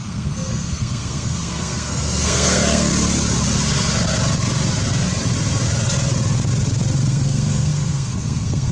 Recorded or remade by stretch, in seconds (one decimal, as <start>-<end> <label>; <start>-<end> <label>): 0.0-2.9 remade; 2.9-7.1 recorded; 7.1-8.7 remade